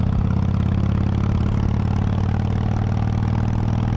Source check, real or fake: real